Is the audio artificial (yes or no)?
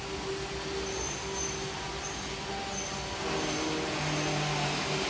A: no